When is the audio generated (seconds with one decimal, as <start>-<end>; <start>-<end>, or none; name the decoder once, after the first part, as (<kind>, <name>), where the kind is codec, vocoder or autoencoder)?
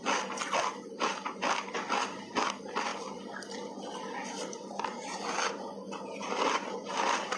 none